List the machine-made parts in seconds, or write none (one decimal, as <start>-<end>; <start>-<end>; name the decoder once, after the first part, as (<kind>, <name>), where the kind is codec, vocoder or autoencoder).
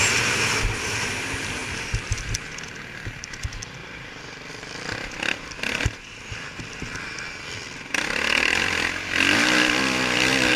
1.6-2.6 (vocoder, BigVGAN v2); 3.8-4.5